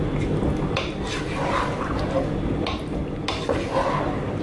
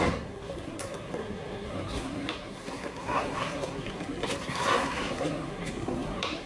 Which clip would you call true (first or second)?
first